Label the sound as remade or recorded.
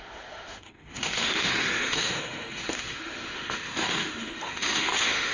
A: remade